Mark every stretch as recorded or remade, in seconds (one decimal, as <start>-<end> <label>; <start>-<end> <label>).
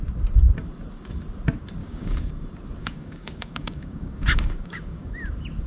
0.0-1.8 recorded; 1.8-2.3 remade; 2.3-2.8 recorded; 2.8-5.1 remade; 5.1-5.7 recorded